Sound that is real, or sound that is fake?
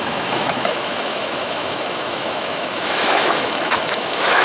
fake